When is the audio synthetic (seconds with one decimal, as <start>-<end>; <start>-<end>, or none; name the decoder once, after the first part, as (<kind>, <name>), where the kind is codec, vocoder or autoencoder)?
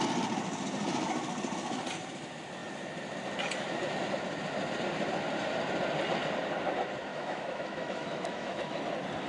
7.1-8.8 (autoencoder, DAC-VAE)